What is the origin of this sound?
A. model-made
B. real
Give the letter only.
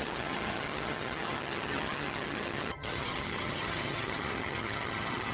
A